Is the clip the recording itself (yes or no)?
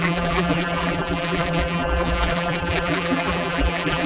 no